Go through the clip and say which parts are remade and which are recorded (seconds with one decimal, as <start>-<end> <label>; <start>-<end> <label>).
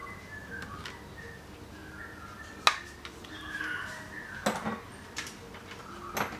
0.0-6.4 recorded